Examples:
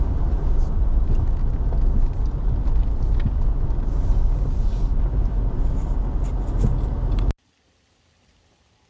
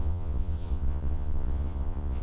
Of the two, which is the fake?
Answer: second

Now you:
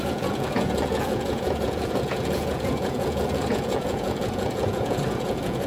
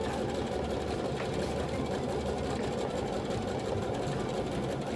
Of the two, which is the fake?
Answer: first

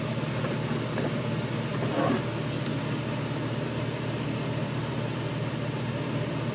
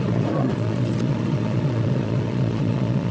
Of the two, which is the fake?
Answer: second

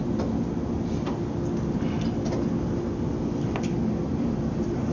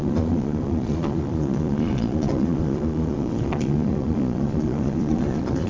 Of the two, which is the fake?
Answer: second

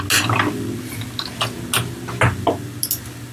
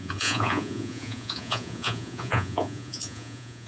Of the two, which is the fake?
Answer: second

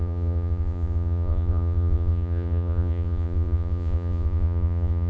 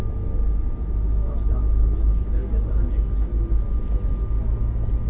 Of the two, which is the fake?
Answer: first